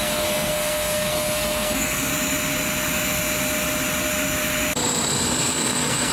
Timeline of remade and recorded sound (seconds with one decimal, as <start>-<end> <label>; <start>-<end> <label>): 0.0-2.1 remade; 2.1-5.1 recorded; 5.1-6.1 remade